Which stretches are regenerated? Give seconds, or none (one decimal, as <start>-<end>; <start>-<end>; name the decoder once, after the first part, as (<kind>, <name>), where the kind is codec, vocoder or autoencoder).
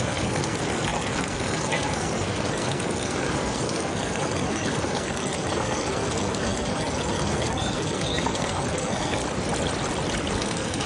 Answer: 0.0-9.2 (codec, SNAC); 10.3-10.9